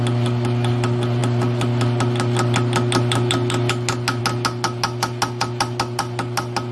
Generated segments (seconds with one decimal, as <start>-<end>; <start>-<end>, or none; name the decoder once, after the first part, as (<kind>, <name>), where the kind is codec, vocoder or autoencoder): none